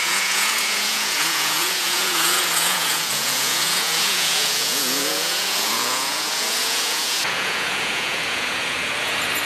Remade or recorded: remade